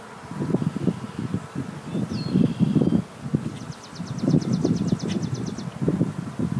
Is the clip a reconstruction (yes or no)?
no